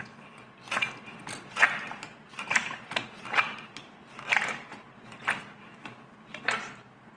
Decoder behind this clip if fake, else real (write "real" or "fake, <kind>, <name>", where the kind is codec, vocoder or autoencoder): real